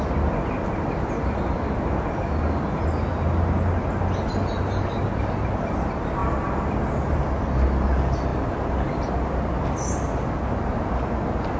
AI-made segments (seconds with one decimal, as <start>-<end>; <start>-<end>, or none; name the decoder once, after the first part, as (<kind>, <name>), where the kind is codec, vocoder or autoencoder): 8.3-9.1 (vocoder, BigVGAN v2)

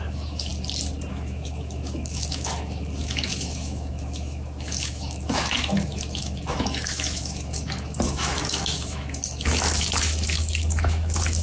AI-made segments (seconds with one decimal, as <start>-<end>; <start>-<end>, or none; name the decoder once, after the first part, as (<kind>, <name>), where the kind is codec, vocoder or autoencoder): 0.0-0.5 (autoencoder, DAC-VAE); 1.1-11.4

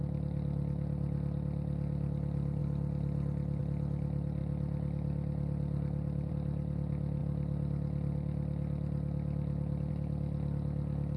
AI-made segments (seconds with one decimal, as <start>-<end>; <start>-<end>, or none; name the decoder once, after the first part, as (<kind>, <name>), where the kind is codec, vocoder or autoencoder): none